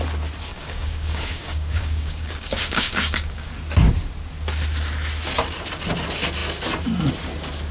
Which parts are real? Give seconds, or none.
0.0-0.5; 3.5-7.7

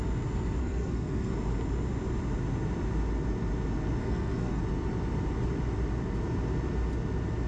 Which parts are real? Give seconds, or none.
0.0-0.6; 1.3-4.0; 4.6-7.5

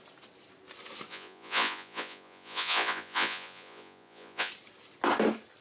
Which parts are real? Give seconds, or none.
0.0-1.1; 4.5-5.6

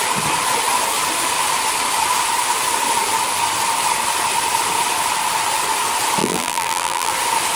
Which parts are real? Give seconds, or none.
0.0-6.2; 7.1-7.6

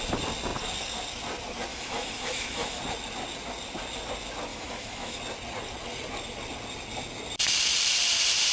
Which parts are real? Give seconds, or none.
0.0-1.7; 2.8-4.5; 5.2-8.5